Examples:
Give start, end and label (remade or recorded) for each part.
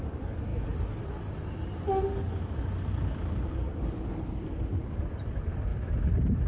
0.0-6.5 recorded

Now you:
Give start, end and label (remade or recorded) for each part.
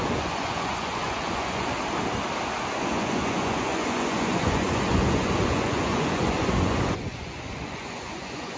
0.0-1.7 remade; 1.7-2.7 recorded; 2.7-8.6 remade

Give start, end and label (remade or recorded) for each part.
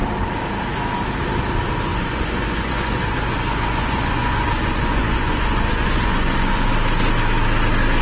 0.0-1.9 recorded; 1.9-6.7 remade; 6.7-8.0 recorded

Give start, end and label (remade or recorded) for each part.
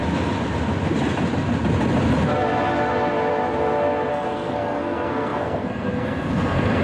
0.0-4.1 recorded; 4.1-6.8 remade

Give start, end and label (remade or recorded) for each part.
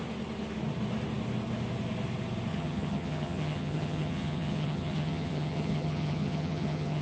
0.0-2.5 recorded; 2.5-7.0 remade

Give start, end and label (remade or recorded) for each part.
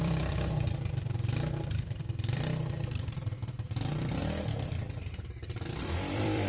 0.0-4.2 remade; 4.2-5.1 recorded; 5.1-6.5 remade